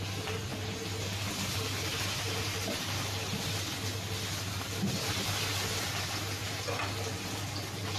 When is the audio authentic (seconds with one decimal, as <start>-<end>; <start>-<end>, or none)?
0.0-8.0